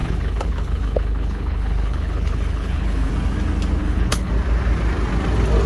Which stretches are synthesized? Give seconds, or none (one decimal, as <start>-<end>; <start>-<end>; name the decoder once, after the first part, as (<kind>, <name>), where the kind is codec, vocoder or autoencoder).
0.0-3.1 (codec, HILCodec); 3.8-4.3